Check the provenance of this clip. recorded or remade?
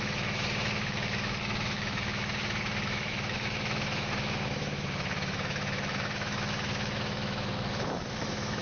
remade